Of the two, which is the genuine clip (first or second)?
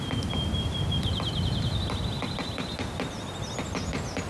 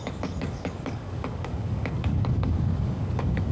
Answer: first